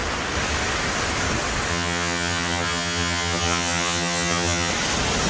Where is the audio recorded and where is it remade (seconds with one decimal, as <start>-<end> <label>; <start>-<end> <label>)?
0.0-1.7 recorded; 1.7-4.7 remade; 4.7-5.3 recorded